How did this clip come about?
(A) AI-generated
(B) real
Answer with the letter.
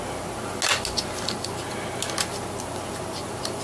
B